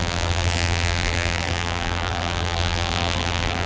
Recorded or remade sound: remade